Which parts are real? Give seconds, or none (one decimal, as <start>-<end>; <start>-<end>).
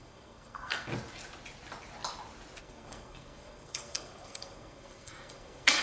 0.9-2.6